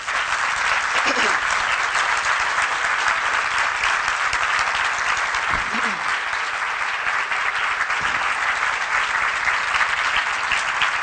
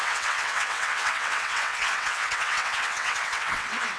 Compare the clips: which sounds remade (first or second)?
second